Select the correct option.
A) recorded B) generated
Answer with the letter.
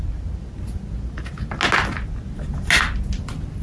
A